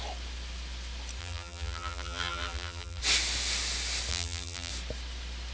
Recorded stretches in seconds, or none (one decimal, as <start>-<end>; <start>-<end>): 0.0-1.2; 3.0-4.1; 4.7-5.5